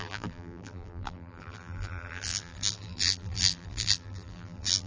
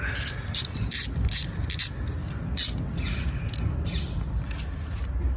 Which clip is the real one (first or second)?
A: second